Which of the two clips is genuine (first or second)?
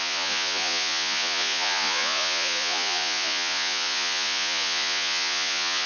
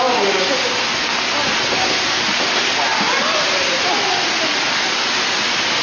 second